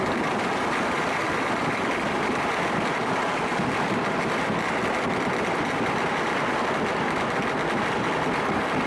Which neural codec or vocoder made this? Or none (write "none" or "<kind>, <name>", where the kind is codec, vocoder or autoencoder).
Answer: vocoder, BigVGAN v2